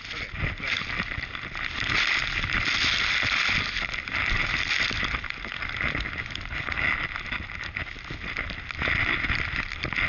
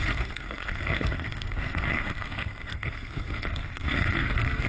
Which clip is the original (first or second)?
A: first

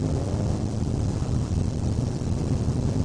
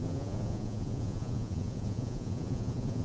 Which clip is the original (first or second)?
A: first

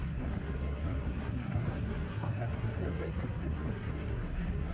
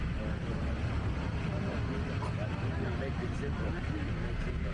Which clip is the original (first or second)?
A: second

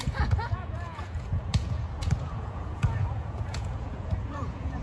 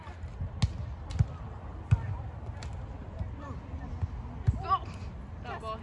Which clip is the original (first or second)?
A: second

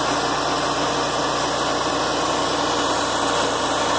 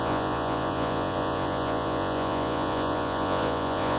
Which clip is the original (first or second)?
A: first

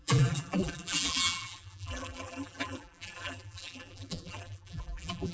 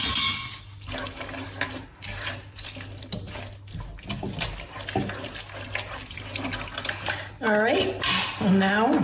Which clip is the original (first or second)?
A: second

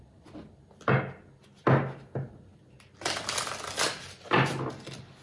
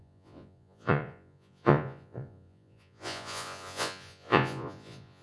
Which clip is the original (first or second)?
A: first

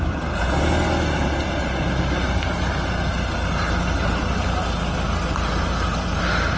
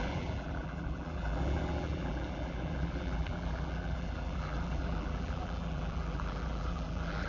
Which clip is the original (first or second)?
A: first